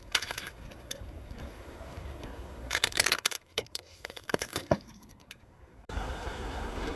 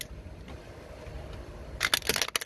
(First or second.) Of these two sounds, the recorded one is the second